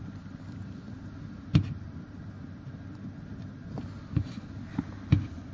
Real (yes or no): yes